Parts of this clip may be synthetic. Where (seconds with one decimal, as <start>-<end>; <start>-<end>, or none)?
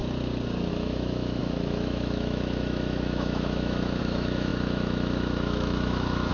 0.7-6.3